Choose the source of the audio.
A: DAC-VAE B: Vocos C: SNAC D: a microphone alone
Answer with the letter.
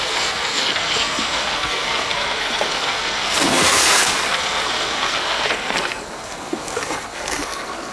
C